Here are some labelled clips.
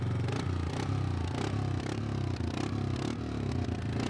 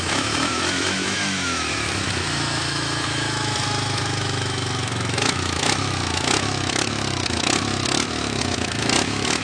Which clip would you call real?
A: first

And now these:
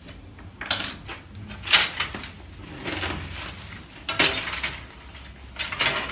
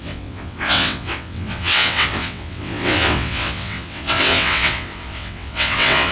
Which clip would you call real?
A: first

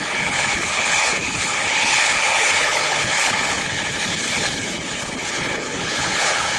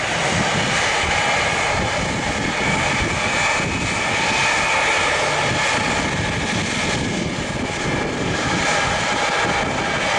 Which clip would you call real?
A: second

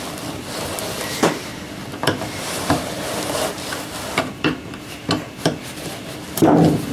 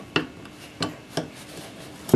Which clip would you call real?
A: second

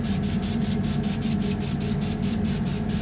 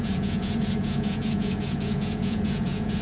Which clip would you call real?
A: first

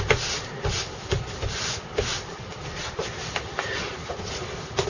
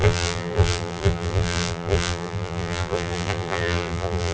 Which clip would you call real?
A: first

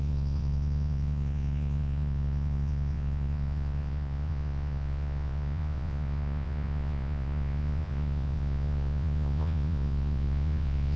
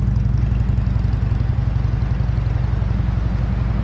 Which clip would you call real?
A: second